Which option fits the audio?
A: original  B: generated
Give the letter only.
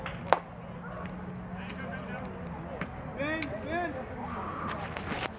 A